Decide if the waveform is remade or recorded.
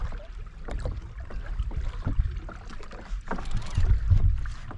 recorded